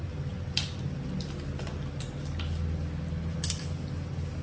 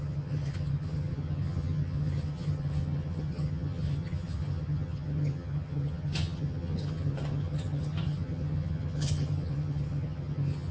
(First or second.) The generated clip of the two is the second